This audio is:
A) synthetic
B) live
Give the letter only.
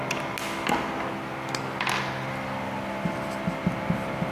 B